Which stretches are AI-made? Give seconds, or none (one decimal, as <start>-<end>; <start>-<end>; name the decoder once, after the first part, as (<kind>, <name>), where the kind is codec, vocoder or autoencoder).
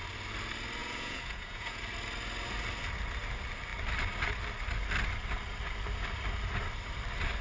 0.8-1.8 (vocoder, Vocos)